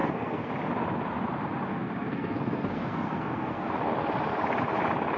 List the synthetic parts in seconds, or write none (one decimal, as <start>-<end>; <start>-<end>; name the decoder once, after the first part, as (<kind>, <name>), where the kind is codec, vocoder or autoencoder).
0.0-0.5 (codec, SNAC); 1.7-3.7